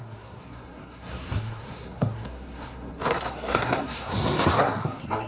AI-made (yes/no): yes